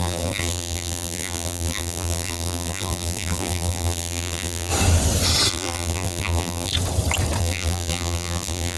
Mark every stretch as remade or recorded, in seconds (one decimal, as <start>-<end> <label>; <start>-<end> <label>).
0.0-4.7 remade; 4.7-5.5 recorded; 5.5-6.7 remade; 6.7-7.4 recorded; 7.4-8.8 remade